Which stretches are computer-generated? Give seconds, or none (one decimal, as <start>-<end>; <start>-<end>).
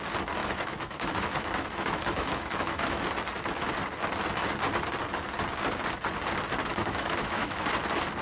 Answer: 0.4-3.0; 6.7-7.7